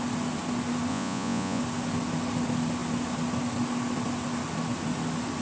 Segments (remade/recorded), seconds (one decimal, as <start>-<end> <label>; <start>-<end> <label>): 0.0-0.9 recorded; 0.9-1.6 remade; 1.6-5.4 recorded